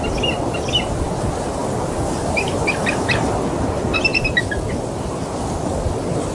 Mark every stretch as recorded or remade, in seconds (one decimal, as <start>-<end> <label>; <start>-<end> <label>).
0.0-6.3 recorded